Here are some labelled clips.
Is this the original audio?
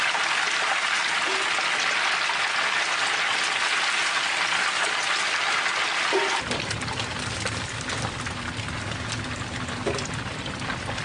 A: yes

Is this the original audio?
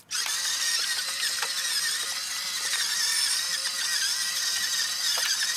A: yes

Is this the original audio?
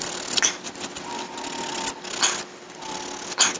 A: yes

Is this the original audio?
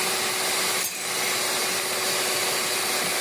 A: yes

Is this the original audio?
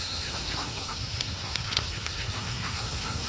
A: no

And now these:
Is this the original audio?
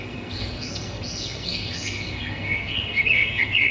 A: no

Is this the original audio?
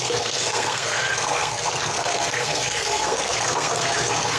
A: no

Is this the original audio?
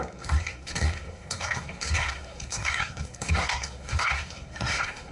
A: no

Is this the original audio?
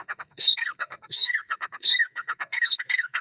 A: no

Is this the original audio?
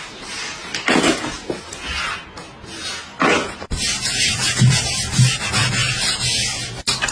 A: yes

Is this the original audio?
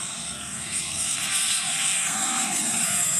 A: no